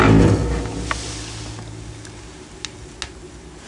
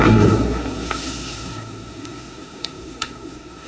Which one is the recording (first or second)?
first